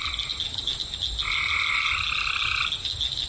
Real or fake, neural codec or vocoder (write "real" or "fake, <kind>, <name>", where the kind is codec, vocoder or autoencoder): real